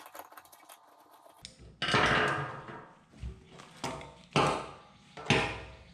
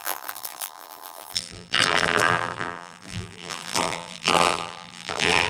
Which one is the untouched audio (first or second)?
first